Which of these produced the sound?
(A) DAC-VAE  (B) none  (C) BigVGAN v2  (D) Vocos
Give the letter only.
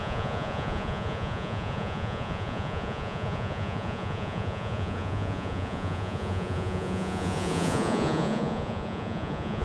D